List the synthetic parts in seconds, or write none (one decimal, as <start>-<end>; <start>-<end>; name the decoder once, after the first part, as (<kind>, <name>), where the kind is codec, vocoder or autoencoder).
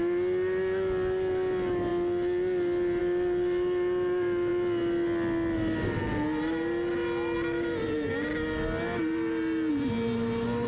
none